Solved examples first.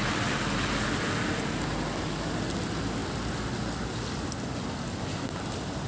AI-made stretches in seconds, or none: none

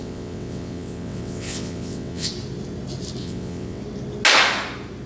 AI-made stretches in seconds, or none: 0.0-2.3; 3.2-3.8

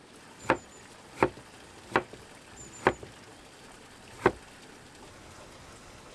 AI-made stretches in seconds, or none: none

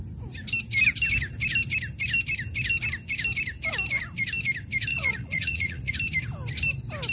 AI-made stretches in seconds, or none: 4.9-5.9

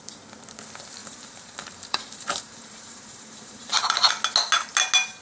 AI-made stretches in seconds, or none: 1.0-4.1

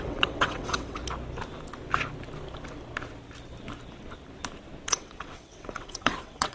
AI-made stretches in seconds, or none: 0.0-1.0; 4.9-6.5